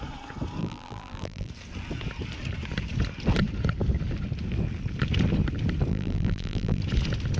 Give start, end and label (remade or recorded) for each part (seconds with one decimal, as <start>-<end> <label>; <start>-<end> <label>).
0.0-0.6 recorded; 0.6-1.5 remade; 1.5-5.9 recorded; 5.9-6.8 remade; 6.8-7.4 recorded